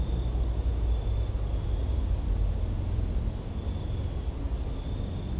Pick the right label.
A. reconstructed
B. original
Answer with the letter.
B